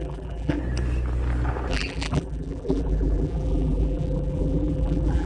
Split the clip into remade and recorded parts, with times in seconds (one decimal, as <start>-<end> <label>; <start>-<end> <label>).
0.0-0.6 remade; 0.6-1.7 recorded; 1.7-5.3 remade